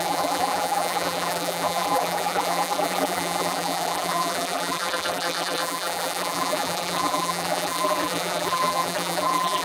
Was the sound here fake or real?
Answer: fake